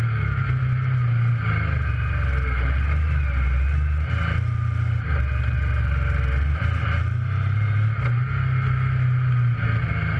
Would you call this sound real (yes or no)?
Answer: yes